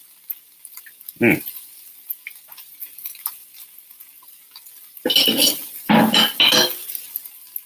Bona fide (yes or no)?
yes